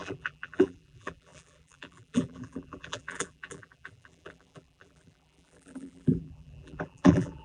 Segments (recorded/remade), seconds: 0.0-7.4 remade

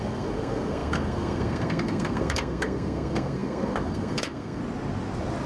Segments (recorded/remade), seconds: 0.0-4.6 remade; 4.6-5.5 recorded

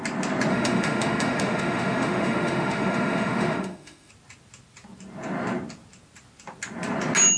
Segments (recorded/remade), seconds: 0.0-0.5 recorded; 0.5-4.1 remade; 4.1-7.4 recorded